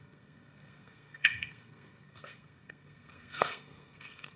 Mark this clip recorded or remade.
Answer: remade